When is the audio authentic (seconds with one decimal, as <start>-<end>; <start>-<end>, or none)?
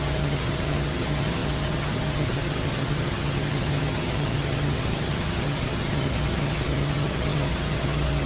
none